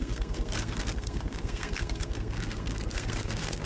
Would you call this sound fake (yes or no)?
yes